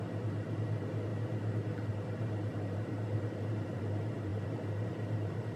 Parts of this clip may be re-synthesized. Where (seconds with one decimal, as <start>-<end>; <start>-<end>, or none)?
0.0-1.1; 1.9-5.6